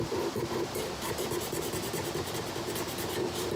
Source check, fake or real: real